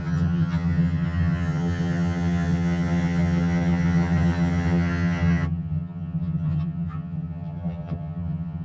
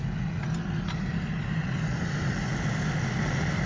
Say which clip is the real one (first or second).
second